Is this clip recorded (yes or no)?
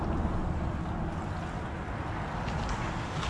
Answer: yes